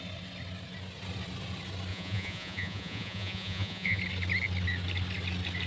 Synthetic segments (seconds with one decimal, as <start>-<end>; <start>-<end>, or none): 1.9-4.0